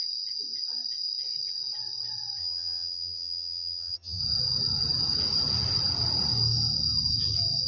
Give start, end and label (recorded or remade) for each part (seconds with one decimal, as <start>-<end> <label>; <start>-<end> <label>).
0.0-2.4 recorded; 2.4-4.2 remade; 4.2-7.7 recorded